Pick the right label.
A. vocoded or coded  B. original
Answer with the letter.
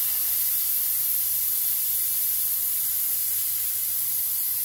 B